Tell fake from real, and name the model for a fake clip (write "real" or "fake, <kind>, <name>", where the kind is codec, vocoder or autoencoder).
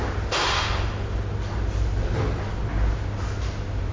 real